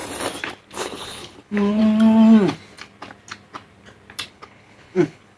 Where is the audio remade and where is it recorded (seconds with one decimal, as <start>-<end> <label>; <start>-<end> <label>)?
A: 0.0-0.8 recorded; 0.8-1.8 remade; 1.8-4.3 recorded; 4.3-5.4 remade